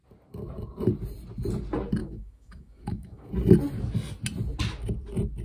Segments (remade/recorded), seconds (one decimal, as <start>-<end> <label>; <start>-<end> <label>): 0.0-2.0 recorded; 2.0-3.3 remade; 3.3-5.4 recorded